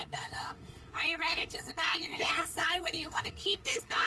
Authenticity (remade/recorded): remade